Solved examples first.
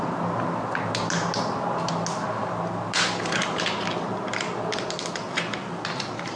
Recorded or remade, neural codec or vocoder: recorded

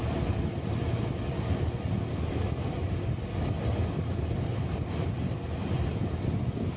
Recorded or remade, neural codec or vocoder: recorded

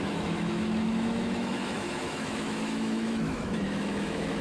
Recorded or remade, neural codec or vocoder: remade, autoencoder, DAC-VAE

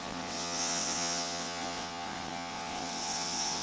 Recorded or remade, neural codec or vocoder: remade, vocoder, WaveNeXt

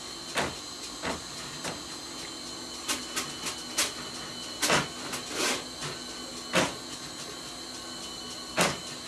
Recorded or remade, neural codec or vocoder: recorded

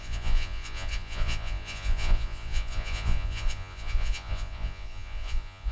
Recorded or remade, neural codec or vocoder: remade, vocoder, Vocos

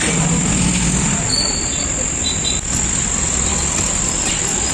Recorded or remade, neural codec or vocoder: recorded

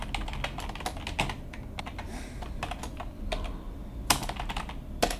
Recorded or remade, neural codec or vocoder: recorded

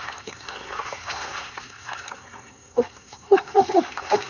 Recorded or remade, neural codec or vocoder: remade, codec, SNAC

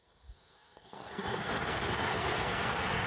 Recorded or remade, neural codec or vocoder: remade, codec, SNAC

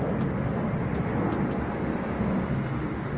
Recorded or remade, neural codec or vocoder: recorded